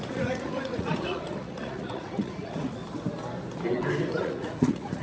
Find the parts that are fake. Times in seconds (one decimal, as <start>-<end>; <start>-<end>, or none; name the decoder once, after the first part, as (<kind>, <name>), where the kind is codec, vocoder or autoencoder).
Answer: 0.0-2.8 (vocoder, Vocos); 4.1-5.0